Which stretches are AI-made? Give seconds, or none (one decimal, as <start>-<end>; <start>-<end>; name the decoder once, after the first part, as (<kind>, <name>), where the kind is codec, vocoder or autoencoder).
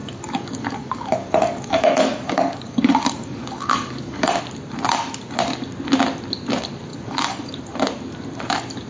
0.0-4.4 (codec, DAC); 6.9-7.6